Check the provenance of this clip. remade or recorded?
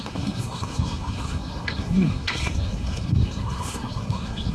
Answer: remade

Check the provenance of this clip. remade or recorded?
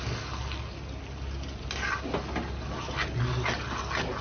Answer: recorded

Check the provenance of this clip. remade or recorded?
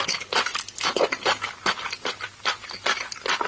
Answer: recorded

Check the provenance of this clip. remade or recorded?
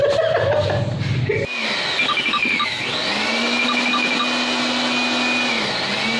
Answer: recorded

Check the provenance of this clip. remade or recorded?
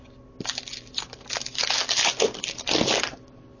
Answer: recorded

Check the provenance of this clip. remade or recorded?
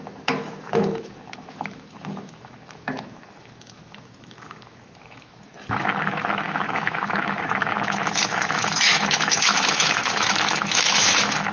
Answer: remade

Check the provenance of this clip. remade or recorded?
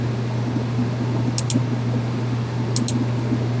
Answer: recorded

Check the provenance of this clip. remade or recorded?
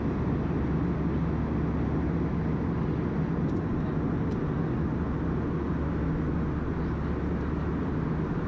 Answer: recorded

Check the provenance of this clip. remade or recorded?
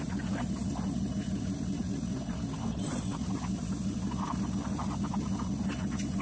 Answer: recorded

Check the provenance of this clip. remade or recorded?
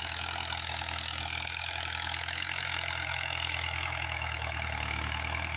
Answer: remade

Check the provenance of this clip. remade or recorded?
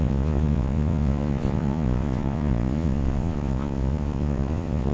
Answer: remade